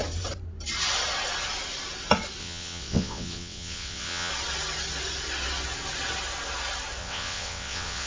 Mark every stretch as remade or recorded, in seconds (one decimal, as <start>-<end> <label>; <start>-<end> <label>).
0.0-2.4 recorded; 2.4-4.3 remade; 4.3-7.0 recorded; 7.0-8.1 remade